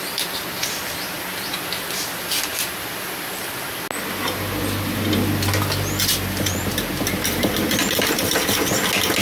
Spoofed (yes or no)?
no